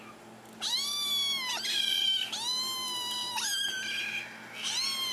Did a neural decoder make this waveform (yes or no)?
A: no